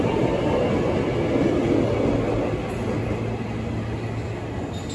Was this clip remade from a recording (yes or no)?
no